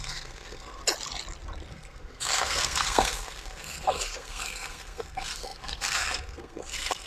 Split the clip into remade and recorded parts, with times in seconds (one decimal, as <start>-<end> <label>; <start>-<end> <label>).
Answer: 0.0-0.8 remade; 0.8-1.7 recorded; 1.7-7.1 remade